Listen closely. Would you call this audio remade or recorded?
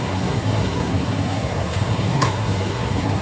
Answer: remade